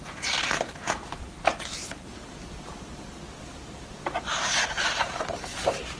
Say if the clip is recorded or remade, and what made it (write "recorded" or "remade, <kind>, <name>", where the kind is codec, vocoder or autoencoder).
remade, vocoder, BigVGAN v2